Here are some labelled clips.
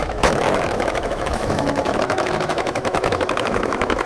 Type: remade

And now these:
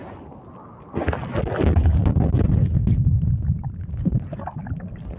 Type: recorded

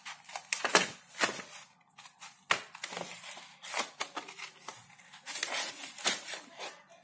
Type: recorded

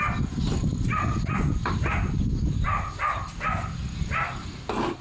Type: recorded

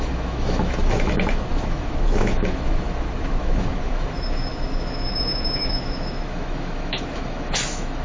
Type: remade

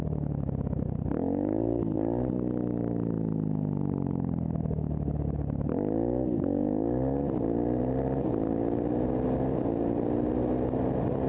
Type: recorded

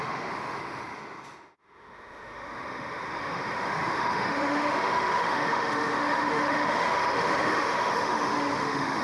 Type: remade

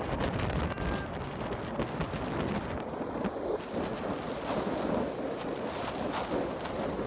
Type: recorded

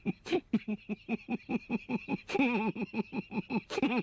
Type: recorded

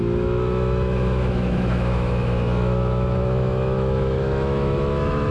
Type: remade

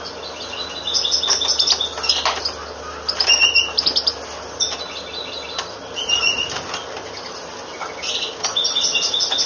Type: recorded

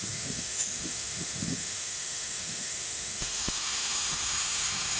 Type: remade